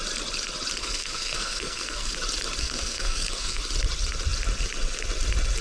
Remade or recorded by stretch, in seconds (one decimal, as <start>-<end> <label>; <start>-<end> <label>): 0.0-0.8 recorded; 0.8-2.1 remade; 2.1-2.6 recorded; 2.6-3.6 remade; 3.6-5.6 recorded